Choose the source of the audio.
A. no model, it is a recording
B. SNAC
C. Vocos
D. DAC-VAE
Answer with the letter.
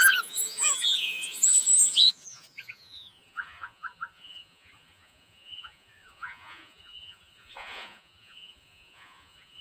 C